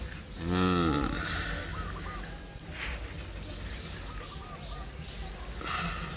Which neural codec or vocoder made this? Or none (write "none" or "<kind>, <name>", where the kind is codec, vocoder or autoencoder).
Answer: none